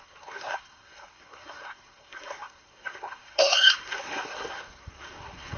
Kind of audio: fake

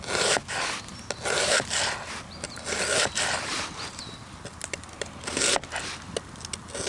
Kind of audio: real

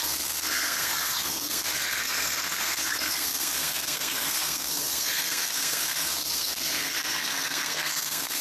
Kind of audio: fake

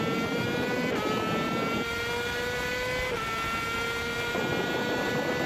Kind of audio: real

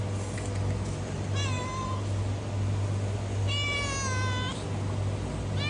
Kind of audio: real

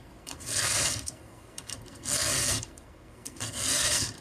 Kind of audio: fake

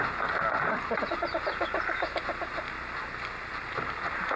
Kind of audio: real